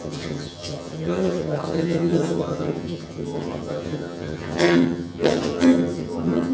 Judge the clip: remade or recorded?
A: remade